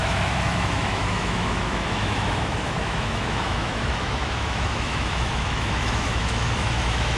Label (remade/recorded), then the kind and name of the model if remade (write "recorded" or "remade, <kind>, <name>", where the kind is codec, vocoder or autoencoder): remade, autoencoder, DAC-VAE